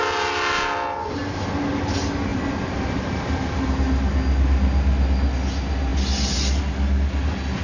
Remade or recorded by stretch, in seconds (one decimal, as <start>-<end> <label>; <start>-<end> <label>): 0.0-7.6 recorded

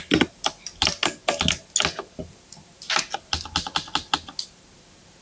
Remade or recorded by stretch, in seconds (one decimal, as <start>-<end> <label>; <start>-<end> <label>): 0.0-5.2 recorded

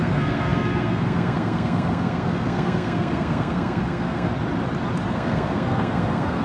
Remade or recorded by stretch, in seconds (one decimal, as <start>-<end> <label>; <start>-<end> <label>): 0.0-4.3 remade; 4.3-5.1 recorded; 5.1-6.4 remade

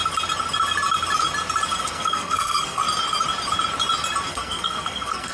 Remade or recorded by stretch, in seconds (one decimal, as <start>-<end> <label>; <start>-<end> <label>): 0.0-1.8 recorded; 1.8-2.8 remade; 2.8-4.3 recorded; 4.3-5.3 remade